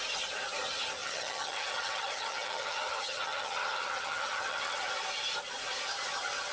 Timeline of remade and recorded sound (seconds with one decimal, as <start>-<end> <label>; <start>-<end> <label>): 0.0-1.0 recorded; 1.0-4.9 remade; 4.9-6.5 recorded